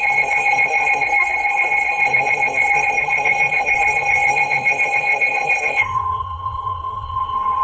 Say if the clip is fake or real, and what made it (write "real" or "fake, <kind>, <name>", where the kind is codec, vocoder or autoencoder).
fake, codec, SNAC